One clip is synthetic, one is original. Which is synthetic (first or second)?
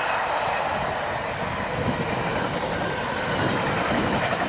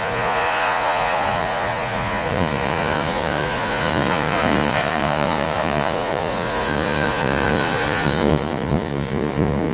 second